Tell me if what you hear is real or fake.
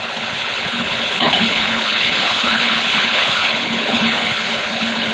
fake